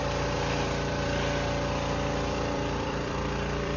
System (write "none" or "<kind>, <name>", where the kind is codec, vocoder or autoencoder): vocoder, BigVGAN v2